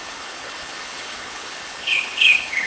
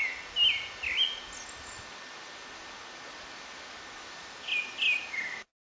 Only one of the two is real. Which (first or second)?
second